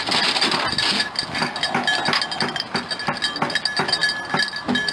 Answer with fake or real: real